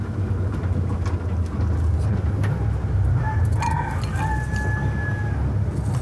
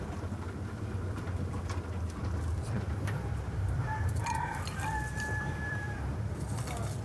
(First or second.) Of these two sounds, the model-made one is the second